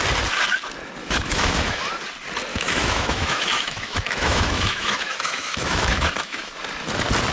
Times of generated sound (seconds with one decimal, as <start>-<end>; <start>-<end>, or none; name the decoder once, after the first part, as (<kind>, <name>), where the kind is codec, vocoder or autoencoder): 1.0-1.9 (autoencoder, DAC-VAE); 2.5-6.5